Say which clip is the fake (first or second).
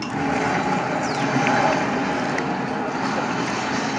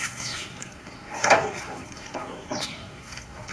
second